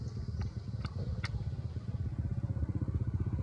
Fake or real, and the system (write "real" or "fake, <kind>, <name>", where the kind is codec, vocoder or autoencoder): real